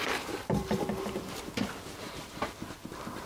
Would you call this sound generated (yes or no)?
no